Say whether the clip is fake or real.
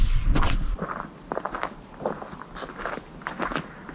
real